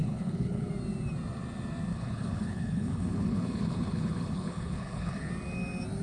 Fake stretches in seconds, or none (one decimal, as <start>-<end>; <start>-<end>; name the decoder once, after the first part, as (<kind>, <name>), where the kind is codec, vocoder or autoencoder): 0.0-0.7 (codec, HILCodec); 1.9-5.3